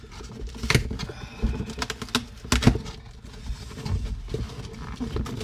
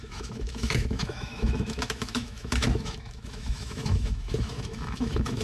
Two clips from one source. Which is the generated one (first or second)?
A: second